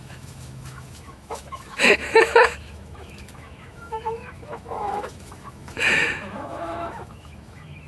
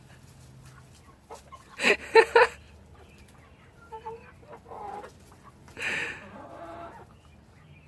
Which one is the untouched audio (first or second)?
second